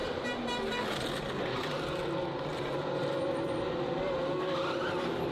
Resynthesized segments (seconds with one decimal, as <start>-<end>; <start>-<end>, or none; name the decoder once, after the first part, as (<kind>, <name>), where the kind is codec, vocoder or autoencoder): none

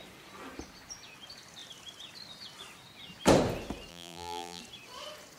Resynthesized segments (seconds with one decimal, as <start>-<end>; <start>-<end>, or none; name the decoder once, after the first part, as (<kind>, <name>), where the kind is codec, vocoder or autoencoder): 3.9-4.6 (vocoder, BigVGAN v2)

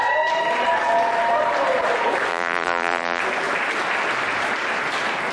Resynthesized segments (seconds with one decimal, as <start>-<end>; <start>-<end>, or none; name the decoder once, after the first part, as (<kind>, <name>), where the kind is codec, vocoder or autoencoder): 2.3-3.2 (vocoder, BigVGAN v2)